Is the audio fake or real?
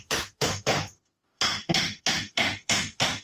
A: fake